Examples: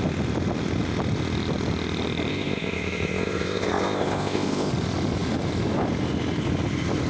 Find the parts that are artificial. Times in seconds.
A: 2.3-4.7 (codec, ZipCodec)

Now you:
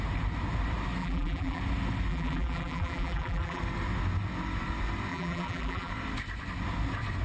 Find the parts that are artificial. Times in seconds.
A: 1.0-1.6 (vocoder, BigVGAN v2); 2.1-3.6; 5.1-5.9

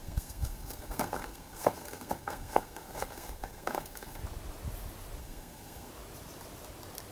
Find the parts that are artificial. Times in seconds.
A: 0.0-4.2 (codec, SNAC); 5.2-5.9